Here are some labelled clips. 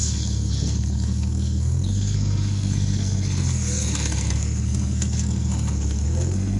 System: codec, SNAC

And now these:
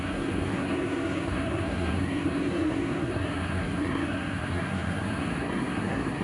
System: codec, SNAC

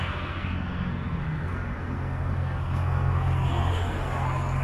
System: codec, SNAC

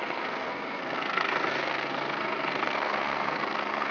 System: codec, SNAC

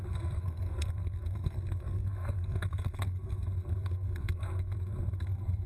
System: codec, SNAC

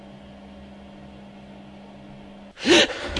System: none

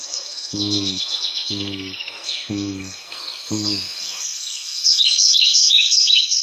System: codec, SNAC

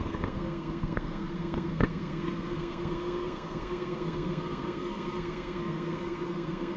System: codec, SNAC